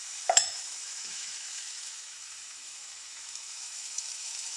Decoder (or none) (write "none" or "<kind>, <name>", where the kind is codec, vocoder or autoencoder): autoencoder, DAC-VAE